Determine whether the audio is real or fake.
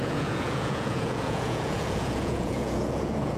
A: fake